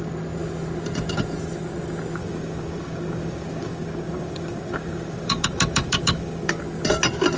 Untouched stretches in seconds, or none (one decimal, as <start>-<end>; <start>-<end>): 0.0-2.2; 6.6-7.4